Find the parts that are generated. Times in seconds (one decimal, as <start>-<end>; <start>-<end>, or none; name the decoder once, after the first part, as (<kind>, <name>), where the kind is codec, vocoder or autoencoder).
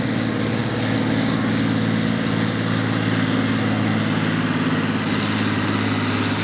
none